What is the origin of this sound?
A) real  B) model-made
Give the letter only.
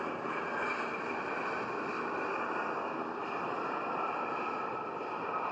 B